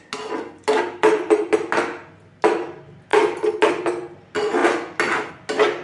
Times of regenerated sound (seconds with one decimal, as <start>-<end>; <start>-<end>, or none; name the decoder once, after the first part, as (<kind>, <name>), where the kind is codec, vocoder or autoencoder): none